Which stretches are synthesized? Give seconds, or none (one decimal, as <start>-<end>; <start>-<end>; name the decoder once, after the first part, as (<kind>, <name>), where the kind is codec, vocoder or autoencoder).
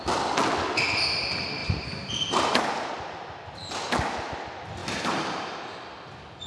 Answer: 1.6-2.9 (vocoder, BigVGAN v2); 4.8-5.6